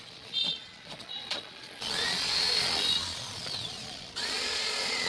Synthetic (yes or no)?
yes